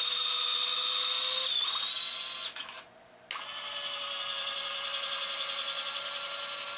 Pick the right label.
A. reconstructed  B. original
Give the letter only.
B